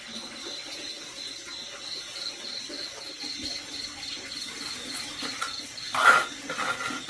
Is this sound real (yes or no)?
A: yes